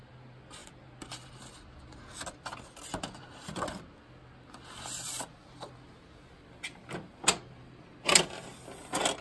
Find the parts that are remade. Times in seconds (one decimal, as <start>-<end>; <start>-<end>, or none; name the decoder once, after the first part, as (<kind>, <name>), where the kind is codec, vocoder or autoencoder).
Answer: none